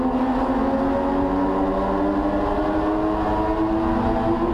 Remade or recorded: recorded